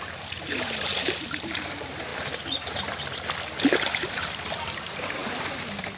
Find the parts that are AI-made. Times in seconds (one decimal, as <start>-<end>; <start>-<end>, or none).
0.0-0.9; 1.4-2.1; 3.7-6.0